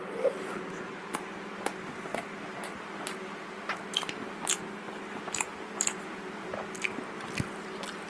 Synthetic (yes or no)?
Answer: no